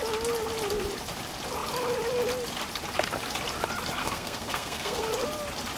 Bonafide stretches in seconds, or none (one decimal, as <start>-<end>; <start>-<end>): 0.0-4.0; 5.1-5.8